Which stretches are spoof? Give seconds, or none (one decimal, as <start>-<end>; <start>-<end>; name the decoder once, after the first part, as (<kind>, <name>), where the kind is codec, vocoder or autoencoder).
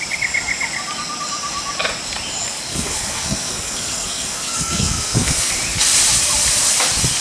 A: 2.7-5.5 (codec, SNAC)